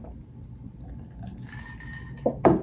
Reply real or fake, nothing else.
real